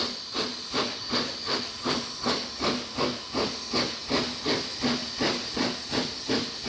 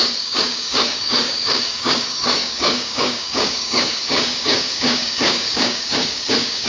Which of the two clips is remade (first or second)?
second